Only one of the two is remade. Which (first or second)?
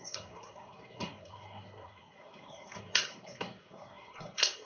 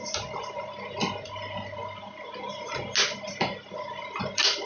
first